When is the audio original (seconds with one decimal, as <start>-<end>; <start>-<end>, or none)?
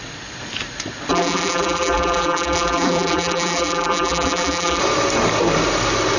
0.0-1.1; 4.8-6.2